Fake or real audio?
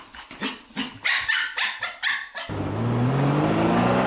real